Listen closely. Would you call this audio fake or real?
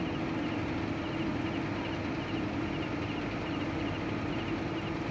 real